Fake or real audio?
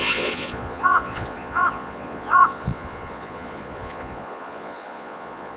fake